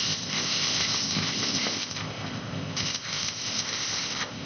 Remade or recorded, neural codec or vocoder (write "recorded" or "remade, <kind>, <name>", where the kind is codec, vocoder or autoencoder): remade, codec, ZipCodec